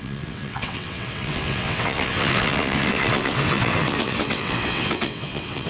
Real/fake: fake